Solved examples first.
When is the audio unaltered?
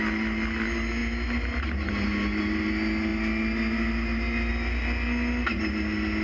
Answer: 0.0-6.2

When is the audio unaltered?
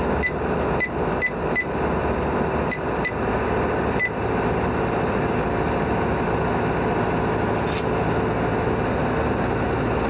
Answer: 0.0-10.1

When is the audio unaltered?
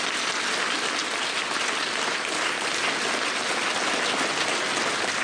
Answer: 0.0-5.2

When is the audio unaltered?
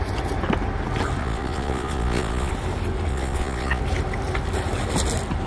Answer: 0.0-1.2; 2.5-3.1; 3.8-5.5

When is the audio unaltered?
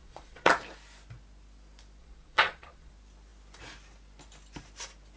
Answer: 0.5-2.0; 2.9-5.2